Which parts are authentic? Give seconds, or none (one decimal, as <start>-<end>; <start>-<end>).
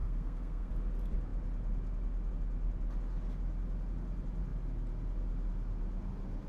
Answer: 0.7-6.5